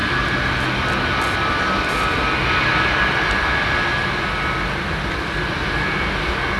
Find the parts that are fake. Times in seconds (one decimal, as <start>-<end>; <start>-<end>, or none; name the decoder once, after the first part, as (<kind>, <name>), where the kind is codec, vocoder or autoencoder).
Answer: none